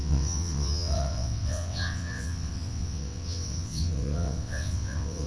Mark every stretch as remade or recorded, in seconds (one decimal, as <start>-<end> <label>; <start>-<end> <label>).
0.0-5.3 remade